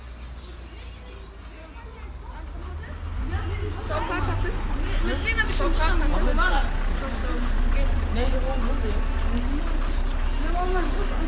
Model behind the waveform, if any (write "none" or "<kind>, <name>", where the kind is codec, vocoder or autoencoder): none